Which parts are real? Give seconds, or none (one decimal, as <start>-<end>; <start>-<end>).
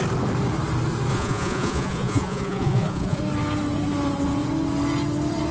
0.0-1.1; 3.2-5.5